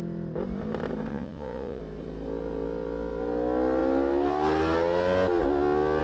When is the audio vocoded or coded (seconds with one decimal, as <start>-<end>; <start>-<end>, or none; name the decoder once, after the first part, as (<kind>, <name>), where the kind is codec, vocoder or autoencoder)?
1.1-1.8 (vocoder, Vocos)